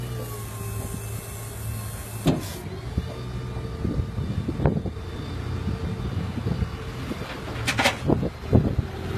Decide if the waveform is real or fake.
real